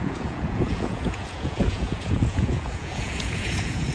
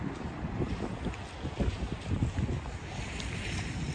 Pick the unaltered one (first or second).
second